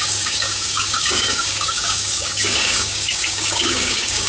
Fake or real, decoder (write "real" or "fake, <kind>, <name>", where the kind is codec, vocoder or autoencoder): fake, codec, DAC